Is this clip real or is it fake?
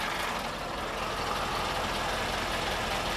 real